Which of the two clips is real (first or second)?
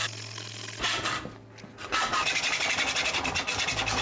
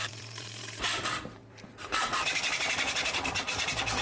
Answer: first